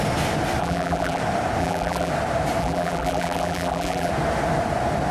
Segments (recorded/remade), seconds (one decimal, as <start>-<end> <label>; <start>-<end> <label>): 0.0-0.6 recorded; 0.6-1.2 remade; 1.2-1.6 recorded; 1.6-2.1 remade; 2.1-2.6 recorded; 2.6-4.1 remade; 4.1-5.1 recorded

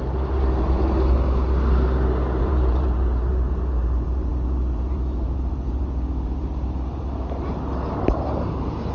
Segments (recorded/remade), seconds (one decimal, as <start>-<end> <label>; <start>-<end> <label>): 0.0-0.8 remade; 0.8-2.4 recorded; 2.4-8.9 remade